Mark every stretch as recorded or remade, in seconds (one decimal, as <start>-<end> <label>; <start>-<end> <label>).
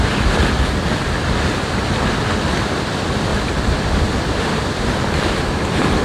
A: 0.0-6.0 recorded